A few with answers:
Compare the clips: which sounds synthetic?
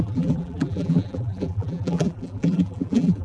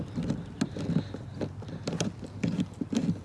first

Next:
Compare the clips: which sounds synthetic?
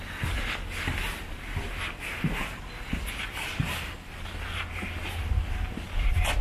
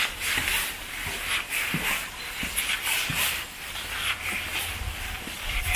second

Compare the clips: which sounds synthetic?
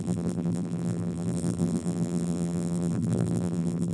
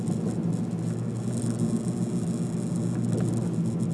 first